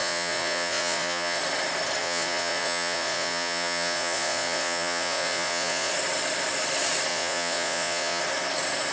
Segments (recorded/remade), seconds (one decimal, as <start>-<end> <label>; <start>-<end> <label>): 0.0-1.4 remade; 1.4-2.0 recorded; 2.0-5.9 remade; 5.9-7.1 recorded; 7.1-8.2 remade; 8.2-8.9 recorded